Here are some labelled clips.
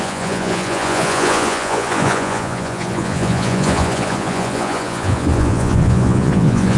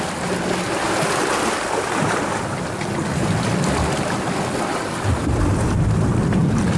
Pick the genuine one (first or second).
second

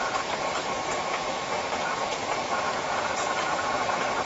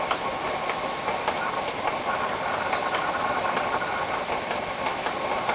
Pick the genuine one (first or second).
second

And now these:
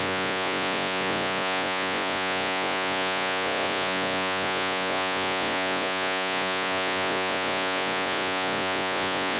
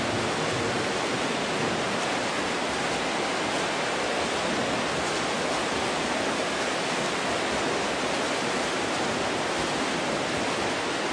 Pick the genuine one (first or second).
second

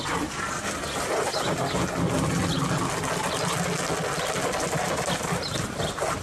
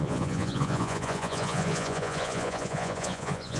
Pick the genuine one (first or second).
first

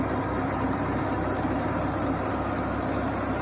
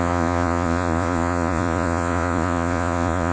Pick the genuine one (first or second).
first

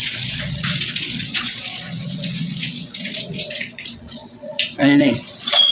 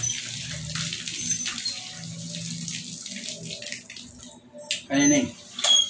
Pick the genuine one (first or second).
second